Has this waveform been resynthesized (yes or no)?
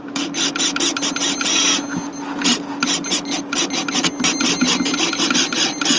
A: no